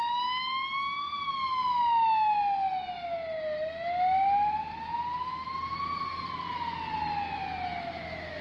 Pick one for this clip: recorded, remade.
recorded